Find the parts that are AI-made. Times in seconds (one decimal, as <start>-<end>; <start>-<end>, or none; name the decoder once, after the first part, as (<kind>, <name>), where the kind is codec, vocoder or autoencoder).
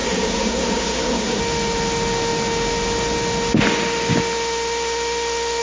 0.0-1.4 (codec, SNAC)